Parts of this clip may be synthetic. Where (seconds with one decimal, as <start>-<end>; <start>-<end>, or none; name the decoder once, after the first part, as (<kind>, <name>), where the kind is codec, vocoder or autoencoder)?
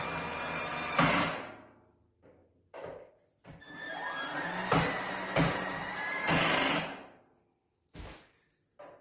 2.4-3.1 (vocoder, BigVGAN v2)